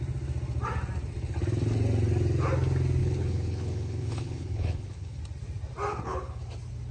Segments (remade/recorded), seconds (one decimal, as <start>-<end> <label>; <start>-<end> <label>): 0.0-3.0 recorded; 3.0-5.2 remade; 5.2-5.9 recorded; 5.9-6.4 remade; 6.4-6.9 recorded

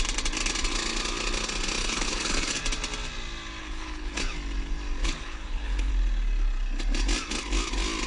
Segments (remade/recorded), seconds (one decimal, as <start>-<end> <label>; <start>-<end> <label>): 0.0-1.8 recorded; 1.8-2.5 remade; 2.5-3.6 recorded; 3.6-4.2 remade; 4.2-5.0 recorded; 5.0-5.9 remade; 5.9-8.1 recorded

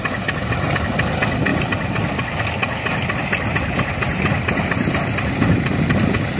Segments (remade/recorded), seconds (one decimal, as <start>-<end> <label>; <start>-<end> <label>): 0.0-6.4 recorded